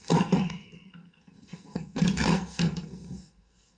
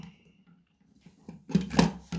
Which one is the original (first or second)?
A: second